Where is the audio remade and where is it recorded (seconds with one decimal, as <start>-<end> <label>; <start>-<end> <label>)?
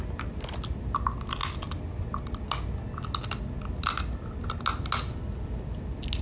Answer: 0.0-6.2 recorded